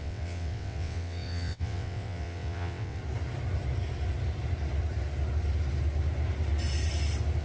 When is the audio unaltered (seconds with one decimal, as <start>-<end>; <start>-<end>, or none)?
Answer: 3.0-7.4